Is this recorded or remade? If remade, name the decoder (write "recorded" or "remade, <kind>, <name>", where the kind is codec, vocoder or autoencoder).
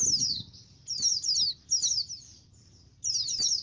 recorded